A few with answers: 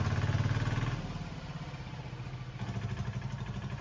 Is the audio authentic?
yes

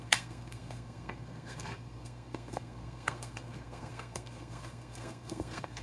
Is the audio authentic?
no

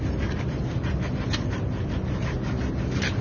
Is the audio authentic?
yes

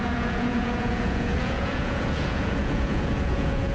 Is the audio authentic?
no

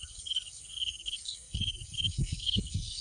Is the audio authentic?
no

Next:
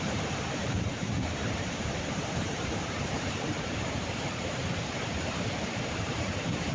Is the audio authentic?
no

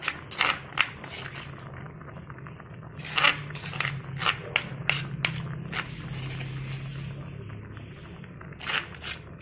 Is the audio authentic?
yes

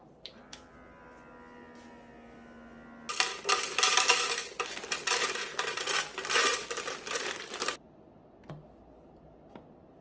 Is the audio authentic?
yes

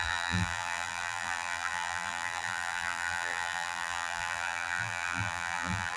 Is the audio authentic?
no